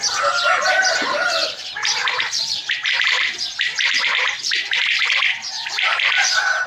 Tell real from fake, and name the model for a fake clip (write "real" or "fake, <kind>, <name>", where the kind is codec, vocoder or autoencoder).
fake, vocoder, BigVGAN v2